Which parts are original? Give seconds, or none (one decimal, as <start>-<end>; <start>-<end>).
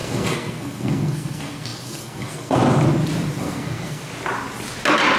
2.6-3.4; 4.1-5.2